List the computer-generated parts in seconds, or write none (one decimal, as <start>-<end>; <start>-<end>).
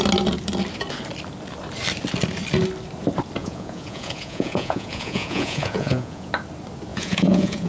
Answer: 3.4-6.3; 6.9-7.7